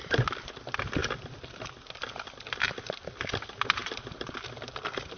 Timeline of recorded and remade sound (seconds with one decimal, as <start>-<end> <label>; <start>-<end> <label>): 0.0-5.2 recorded